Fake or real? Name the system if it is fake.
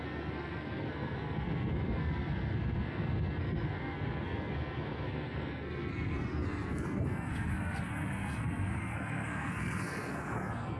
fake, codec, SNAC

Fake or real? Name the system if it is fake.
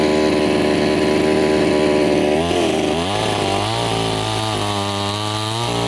real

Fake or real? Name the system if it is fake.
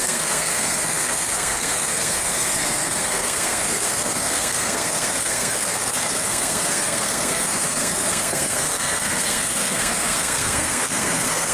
fake, codec, SNAC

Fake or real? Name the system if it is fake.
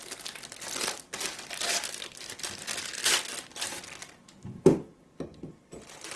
real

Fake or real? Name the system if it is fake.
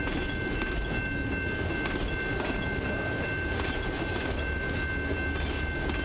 real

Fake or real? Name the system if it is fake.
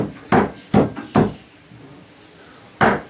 real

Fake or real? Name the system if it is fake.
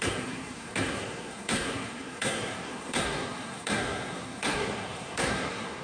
fake, codec, SNAC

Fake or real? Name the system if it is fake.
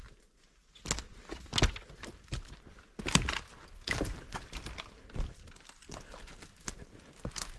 real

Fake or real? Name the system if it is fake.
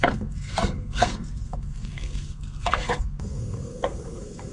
fake, codec, SNAC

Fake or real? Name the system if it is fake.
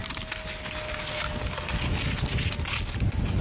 real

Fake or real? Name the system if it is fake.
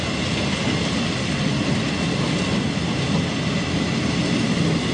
real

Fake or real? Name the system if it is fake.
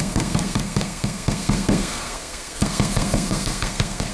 fake, codec, SNAC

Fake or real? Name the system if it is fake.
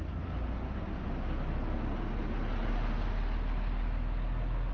real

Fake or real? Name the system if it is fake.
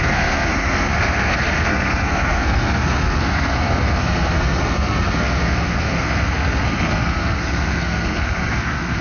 fake, codec, SNAC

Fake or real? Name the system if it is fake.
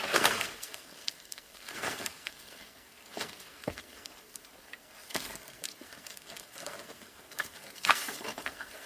fake, codec, SNAC